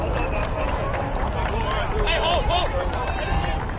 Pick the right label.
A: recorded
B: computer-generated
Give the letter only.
B